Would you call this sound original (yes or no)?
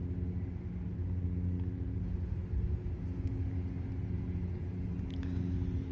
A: yes